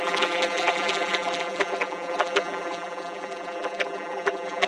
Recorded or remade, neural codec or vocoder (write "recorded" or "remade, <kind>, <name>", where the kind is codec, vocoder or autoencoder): remade, vocoder, BigVGAN v2